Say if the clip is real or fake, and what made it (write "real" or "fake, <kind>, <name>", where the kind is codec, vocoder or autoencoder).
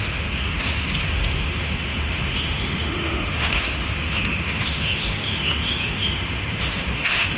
fake, autoencoder, DAC-VAE